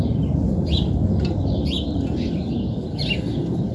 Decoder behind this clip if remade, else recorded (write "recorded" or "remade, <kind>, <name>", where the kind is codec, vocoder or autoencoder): recorded